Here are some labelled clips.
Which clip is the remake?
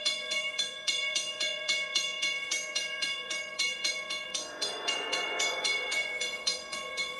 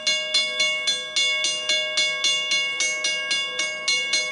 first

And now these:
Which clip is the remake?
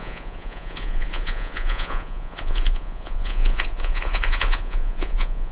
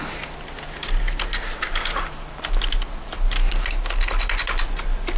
first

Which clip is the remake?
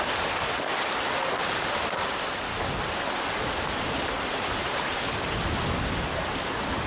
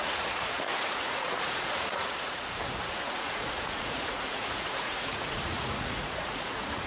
second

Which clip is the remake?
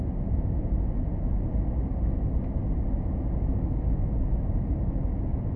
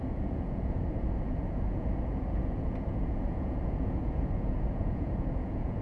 second